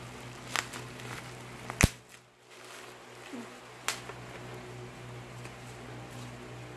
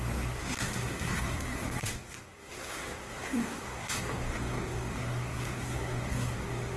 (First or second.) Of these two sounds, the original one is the first